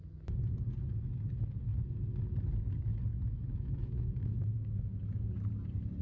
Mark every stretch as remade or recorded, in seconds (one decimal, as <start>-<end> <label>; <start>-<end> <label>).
0.0-3.1 recorded; 3.1-5.0 remade; 5.0-6.0 recorded